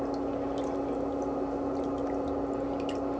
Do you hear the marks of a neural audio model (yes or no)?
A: no